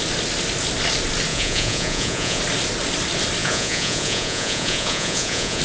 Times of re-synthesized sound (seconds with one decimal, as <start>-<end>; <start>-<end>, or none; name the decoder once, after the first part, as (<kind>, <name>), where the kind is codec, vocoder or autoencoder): 1.3-2.4 (vocoder, Vocos); 3.4-5.6